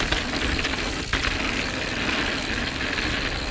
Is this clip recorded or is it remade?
recorded